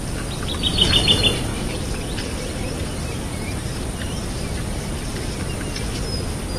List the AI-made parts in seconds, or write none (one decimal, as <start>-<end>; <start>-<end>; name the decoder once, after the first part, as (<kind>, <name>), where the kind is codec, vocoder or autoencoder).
1.5-5.4 (vocoder, BigVGAN v2)